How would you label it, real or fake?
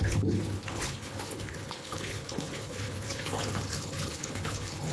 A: fake